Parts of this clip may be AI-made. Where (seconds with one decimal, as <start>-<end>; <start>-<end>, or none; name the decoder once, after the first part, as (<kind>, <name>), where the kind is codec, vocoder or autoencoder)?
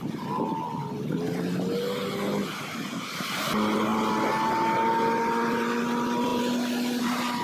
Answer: none